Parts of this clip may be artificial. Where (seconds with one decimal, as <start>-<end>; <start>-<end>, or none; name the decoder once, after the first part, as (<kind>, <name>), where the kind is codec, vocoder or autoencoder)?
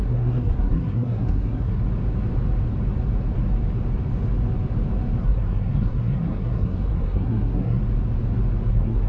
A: 0.0-1.8 (codec, SNAC); 5.2-7.8; 8.7-9.1